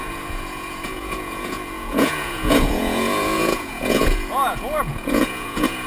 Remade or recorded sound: remade